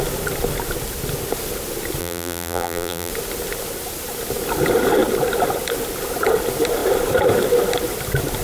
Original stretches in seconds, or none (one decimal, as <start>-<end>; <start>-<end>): 0.0-2.0; 3.1-8.4